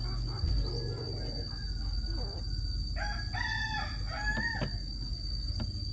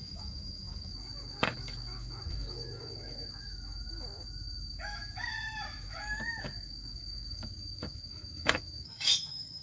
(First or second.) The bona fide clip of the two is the first